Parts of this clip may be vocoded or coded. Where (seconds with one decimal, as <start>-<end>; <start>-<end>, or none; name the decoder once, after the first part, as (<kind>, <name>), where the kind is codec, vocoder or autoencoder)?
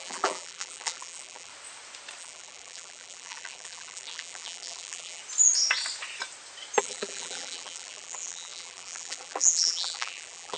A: 0.0-1.5 (vocoder, BigVGAN v2); 2.2-5.2; 6.8-10.6